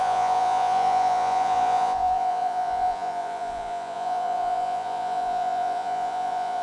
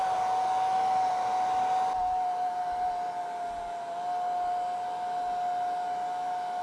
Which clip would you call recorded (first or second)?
second